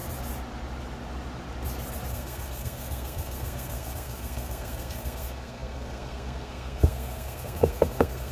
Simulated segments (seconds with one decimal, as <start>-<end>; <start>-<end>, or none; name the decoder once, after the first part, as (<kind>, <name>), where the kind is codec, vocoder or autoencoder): 2.1-8.3 (codec, SNAC)